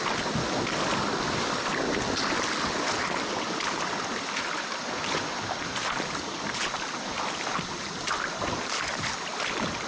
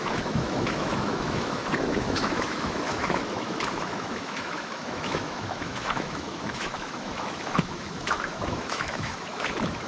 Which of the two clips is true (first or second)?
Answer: first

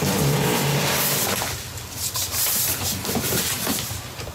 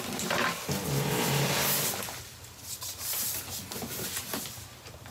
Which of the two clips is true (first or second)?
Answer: second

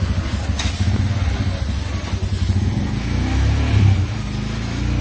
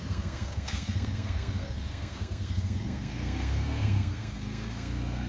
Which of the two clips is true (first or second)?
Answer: first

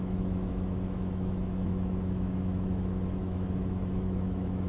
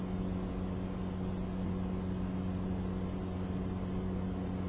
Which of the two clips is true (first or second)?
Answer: second